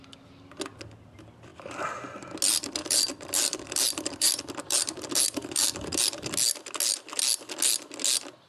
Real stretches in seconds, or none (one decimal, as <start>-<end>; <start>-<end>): 0.0-2.8; 6.0-8.5